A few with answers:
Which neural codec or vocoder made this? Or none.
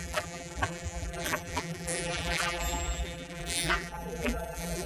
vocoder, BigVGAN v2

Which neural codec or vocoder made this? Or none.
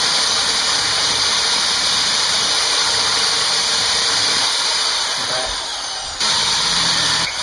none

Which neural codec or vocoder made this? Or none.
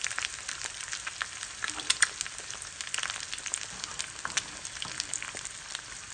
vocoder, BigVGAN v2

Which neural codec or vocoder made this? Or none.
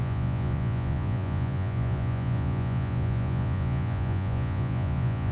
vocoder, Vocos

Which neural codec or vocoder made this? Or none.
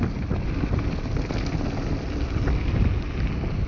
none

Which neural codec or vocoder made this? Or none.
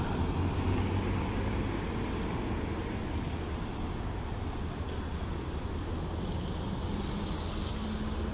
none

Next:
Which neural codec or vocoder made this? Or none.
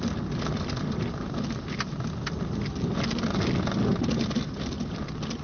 none